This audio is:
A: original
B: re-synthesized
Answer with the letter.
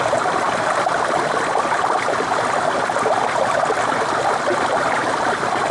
A